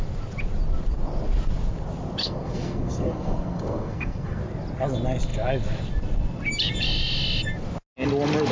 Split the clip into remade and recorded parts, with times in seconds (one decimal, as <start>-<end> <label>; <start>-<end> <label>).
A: 0.0-2.2 recorded; 2.2-4.4 remade; 4.4-8.5 recorded